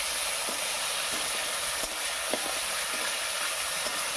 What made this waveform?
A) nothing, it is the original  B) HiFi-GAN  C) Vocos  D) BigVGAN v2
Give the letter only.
A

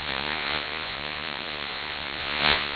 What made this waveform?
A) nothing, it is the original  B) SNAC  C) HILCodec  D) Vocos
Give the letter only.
D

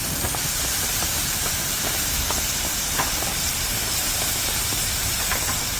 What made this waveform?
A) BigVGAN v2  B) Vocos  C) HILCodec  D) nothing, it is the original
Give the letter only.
A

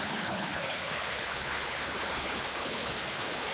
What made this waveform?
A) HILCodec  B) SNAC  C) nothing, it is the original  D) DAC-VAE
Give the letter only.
A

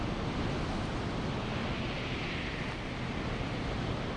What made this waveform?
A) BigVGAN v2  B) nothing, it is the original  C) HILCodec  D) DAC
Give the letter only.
B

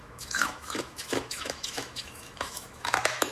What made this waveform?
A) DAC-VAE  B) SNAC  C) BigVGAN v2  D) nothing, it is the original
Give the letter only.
A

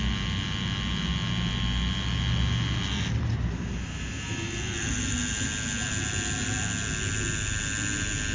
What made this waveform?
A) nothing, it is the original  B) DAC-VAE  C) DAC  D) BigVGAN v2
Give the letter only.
A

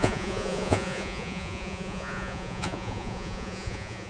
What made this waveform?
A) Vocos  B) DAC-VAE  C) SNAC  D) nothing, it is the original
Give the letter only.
A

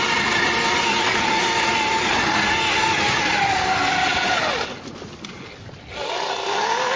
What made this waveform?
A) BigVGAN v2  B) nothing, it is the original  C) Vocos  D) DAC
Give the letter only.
B